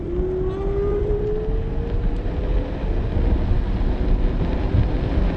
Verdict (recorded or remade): recorded